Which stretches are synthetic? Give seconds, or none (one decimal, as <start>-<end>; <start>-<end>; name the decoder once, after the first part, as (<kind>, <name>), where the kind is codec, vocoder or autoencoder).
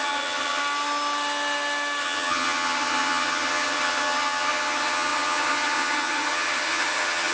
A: 0.0-0.6 (vocoder, HiFi-GAN); 2.0-7.3